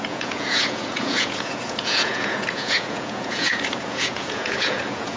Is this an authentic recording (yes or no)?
no